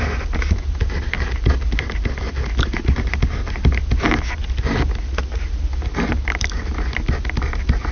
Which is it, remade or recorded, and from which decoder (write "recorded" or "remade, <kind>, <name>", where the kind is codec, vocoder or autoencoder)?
recorded